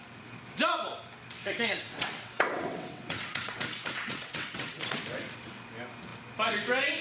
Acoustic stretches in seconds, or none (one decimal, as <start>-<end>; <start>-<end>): 0.0-1.4; 5.0-7.0